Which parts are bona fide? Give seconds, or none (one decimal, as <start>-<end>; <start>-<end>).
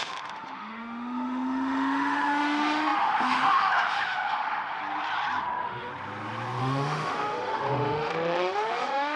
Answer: 4.8-5.4; 5.9-6.6